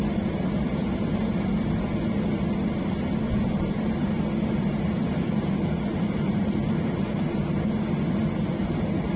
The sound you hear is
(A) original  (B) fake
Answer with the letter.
A